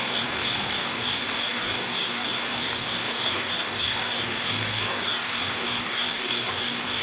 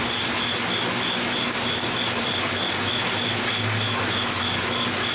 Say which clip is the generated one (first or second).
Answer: first